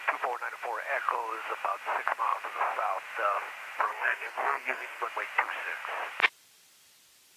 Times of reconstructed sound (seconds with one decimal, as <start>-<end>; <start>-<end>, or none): 3.9-5.0

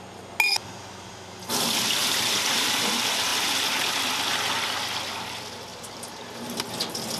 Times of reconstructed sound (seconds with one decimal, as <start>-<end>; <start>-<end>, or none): 0.6-1.1; 2.0-2.7; 5.7-6.6

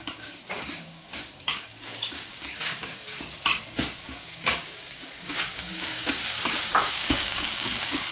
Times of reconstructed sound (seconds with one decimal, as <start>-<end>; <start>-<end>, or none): 0.0-8.1

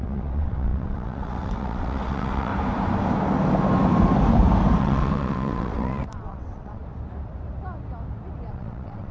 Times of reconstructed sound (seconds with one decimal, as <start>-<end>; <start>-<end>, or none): 0.0-2.5; 4.8-6.8; 8.5-9.1